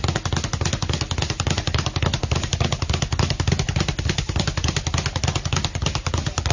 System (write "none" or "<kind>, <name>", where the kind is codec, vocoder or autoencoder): none